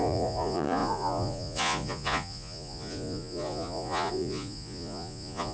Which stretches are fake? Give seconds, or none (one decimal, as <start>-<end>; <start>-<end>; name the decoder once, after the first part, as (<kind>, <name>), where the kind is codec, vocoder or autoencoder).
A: 0.0-5.5 (vocoder, Vocos)

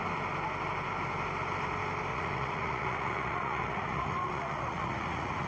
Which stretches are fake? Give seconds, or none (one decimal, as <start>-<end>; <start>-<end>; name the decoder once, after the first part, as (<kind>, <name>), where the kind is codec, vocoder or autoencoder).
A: 2.1-5.5 (vocoder, Vocos)

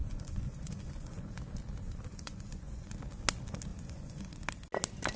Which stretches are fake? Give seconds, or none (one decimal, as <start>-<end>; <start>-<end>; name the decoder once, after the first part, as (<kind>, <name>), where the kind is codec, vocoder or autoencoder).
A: 0.0-1.4 (vocoder, Vocos); 2.1-2.9; 3.7-4.3

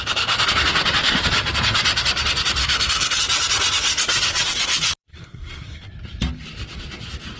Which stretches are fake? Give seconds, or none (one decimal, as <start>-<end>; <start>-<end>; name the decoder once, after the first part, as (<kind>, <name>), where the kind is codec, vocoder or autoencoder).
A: 2.6-3.2 (codec, SNAC); 5.1-5.9

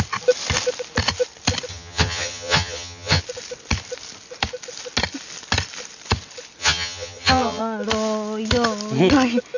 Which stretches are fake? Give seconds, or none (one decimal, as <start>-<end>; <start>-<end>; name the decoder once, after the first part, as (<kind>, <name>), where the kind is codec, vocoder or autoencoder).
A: 1.7-3.2 (vocoder, HiFi-GAN); 6.6-7.6